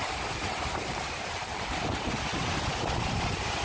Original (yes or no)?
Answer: yes